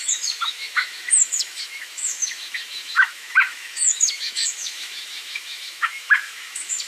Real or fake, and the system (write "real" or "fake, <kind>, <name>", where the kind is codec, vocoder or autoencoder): fake, autoencoder, DAC-VAE